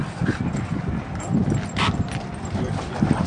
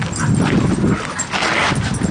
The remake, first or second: first